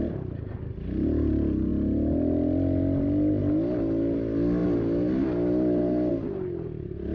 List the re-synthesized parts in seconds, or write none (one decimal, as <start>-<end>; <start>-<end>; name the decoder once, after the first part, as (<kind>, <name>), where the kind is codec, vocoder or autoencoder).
none